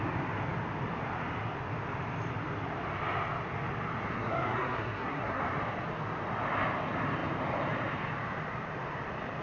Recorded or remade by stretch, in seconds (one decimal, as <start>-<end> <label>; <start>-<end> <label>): 0.0-4.0 recorded; 4.0-5.4 remade; 5.4-9.4 recorded